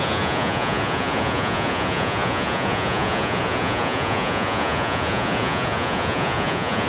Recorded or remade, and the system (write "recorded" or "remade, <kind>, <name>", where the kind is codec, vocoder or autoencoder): remade, vocoder, Vocos